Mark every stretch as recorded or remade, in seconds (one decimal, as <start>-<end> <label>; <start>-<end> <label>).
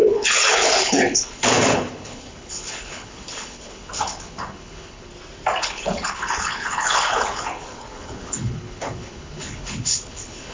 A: 0.0-5.1 remade; 5.1-5.6 recorded; 5.6-10.5 remade